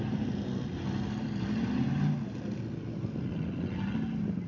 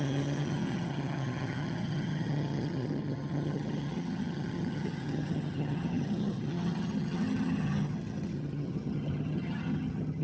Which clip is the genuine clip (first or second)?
first